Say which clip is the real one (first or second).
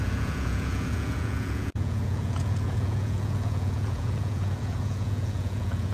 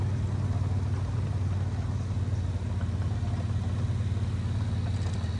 second